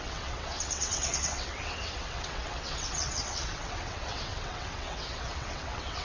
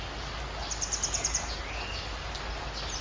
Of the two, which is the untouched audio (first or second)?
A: second